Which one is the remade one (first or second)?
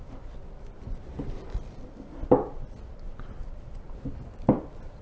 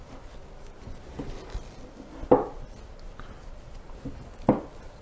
first